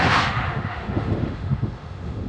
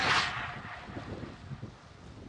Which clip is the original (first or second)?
second